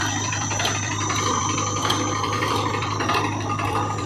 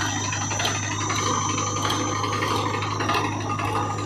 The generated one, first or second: first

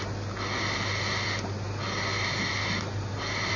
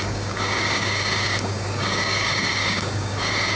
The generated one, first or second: second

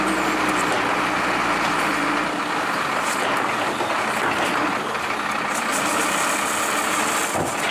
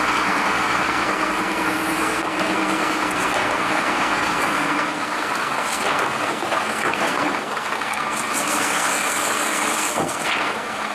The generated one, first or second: second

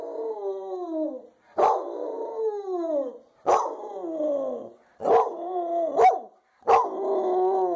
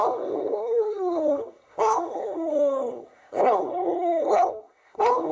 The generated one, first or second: second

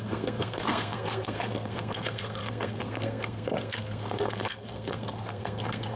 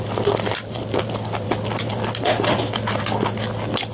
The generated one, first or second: first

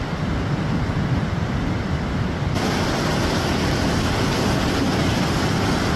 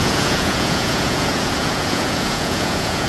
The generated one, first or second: second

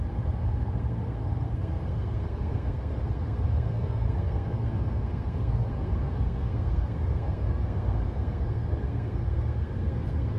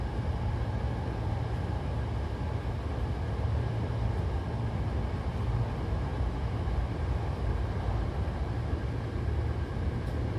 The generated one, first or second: first